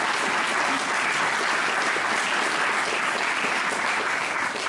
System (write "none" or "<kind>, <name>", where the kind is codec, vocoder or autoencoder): none